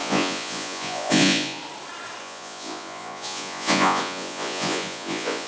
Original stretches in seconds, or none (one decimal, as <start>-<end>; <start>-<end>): 1.6-2.2